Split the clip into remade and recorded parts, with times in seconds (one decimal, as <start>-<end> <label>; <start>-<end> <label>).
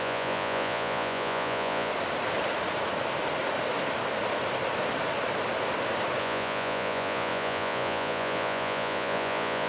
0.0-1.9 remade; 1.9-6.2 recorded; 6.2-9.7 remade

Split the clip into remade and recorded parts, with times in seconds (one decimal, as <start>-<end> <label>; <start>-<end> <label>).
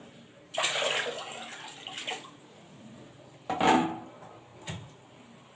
0.0-2.0 recorded; 2.0-3.3 remade; 3.3-4.5 recorded; 4.5-5.1 remade; 5.1-5.6 recorded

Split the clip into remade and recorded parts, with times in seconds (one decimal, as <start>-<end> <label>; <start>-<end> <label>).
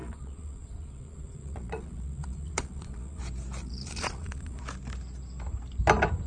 0.0-3.2 remade; 3.2-3.6 recorded; 3.6-4.6 remade; 4.6-6.3 recorded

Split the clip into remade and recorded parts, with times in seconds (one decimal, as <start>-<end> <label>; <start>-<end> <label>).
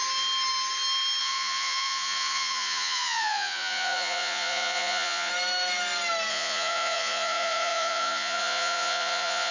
0.0-1.2 recorded; 1.2-5.3 remade; 5.3-6.3 recorded; 6.3-9.5 remade